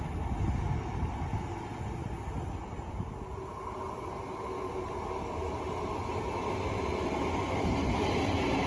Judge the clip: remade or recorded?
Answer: recorded